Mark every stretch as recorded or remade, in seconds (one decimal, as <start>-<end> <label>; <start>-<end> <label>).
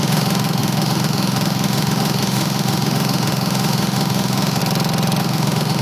0.0-4.6 remade; 4.6-5.2 recorded; 5.2-5.8 remade